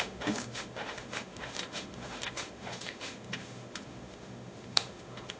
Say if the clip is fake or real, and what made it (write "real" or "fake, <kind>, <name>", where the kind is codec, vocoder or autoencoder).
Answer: fake, autoencoder, DAC-VAE